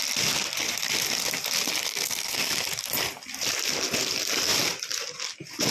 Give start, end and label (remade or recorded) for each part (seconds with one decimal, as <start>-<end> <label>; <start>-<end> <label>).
0.0-1.9 recorded; 1.9-2.5 remade; 2.5-5.7 recorded